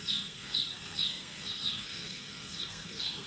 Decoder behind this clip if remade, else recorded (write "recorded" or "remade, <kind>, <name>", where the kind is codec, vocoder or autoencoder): remade, codec, SNAC